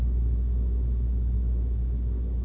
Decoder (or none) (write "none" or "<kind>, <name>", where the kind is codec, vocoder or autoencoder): none